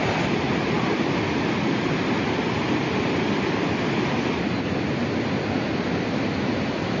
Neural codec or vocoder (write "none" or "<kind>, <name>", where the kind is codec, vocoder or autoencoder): none